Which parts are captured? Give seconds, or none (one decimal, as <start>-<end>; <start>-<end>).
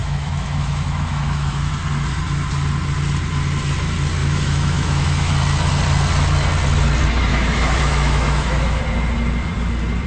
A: 1.7-4.2; 5.3-7.3; 8.8-10.1